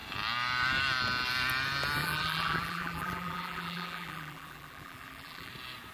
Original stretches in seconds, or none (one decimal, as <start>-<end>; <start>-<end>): 0.0-2.0; 5.5-5.9